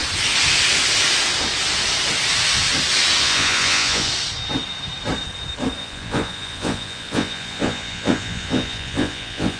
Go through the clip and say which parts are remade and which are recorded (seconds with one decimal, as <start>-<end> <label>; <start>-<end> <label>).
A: 0.0-3.2 recorded; 3.2-4.1 remade; 4.1-5.8 recorded; 5.8-9.6 remade